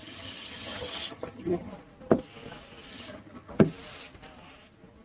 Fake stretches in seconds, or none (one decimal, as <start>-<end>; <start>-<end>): 0.0-1.7; 2.9-3.5